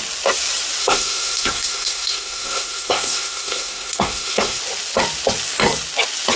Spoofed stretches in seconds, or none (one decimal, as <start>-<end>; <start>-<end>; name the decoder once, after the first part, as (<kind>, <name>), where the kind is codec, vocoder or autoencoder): 0.8-4.6 (codec, SNAC)